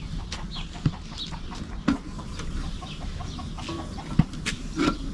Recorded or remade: recorded